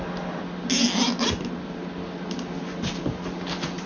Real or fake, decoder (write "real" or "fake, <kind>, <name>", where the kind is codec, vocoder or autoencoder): real